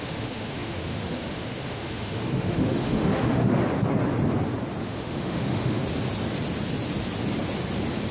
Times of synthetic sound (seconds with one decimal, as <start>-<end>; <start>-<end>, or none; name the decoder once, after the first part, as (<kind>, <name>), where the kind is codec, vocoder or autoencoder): 0.0-3.4 (autoencoder, DAC-VAE); 4.8-5.8